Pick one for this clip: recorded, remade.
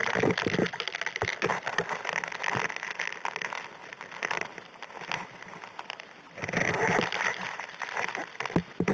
recorded